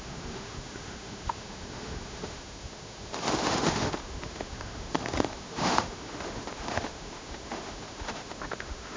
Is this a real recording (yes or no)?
no